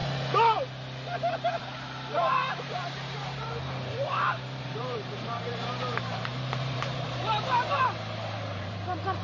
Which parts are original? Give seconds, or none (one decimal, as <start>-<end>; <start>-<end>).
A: 0.0-1.6